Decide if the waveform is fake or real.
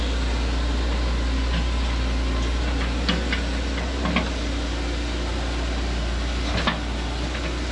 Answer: real